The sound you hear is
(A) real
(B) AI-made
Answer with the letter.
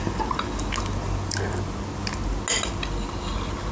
A